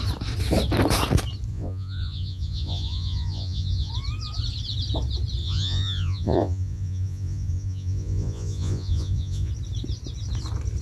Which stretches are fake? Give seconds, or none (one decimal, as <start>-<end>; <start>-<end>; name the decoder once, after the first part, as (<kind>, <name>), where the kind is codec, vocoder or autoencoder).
1.5-3.9 (vocoder, Vocos); 5.4-9.5

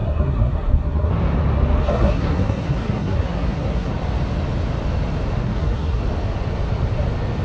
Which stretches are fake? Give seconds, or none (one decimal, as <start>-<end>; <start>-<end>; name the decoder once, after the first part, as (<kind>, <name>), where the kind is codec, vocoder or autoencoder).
0.0-1.1 (codec, SNAC); 1.8-3.9; 5.4-6.0

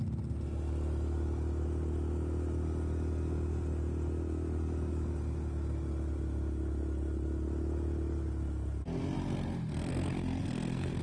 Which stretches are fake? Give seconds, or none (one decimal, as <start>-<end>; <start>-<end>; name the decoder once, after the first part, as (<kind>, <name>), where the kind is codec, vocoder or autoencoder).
9.9-11.0 (codec, SNAC)

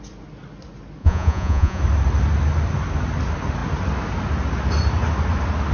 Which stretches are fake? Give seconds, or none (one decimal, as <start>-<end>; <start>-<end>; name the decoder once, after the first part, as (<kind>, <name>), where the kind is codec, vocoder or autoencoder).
1.0-1.8 (vocoder, Vocos)

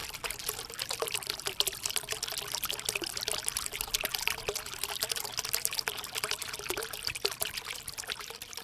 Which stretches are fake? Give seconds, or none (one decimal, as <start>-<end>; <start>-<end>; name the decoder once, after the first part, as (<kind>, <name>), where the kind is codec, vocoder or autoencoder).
0.0-2.4 (vocoder, BigVGAN v2); 6.4-8.6

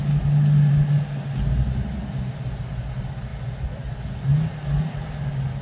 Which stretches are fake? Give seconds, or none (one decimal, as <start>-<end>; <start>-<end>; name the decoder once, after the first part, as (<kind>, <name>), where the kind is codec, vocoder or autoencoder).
none